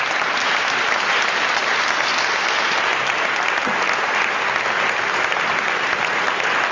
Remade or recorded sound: recorded